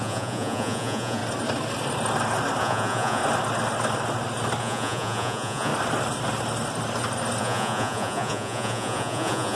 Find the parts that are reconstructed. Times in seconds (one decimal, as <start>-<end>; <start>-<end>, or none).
0.0-1.2; 2.6-3.2; 4.6-5.7; 7.4-9.6